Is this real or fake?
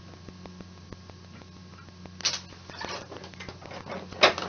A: real